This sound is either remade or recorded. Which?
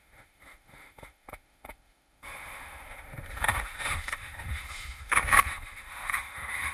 remade